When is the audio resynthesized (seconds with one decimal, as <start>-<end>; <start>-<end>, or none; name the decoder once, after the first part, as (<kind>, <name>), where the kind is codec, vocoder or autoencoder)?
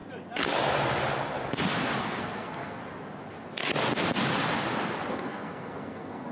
2.0-2.8 (codec, SNAC); 5.1-6.3